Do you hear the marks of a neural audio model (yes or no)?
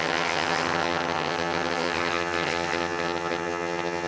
yes